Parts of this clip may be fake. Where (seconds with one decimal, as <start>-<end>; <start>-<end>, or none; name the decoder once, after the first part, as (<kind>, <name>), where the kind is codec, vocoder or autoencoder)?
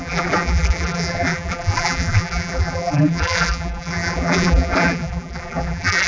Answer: 0.0-6.1 (vocoder, BigVGAN v2)